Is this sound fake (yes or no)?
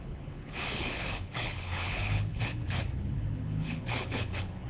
yes